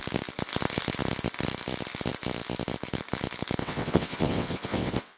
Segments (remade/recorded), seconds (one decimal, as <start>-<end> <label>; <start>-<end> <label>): 0.0-3.6 recorded; 3.6-5.2 remade